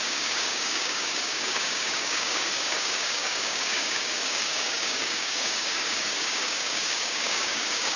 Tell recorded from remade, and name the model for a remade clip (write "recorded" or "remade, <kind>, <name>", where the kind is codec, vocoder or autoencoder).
remade, codec, DAC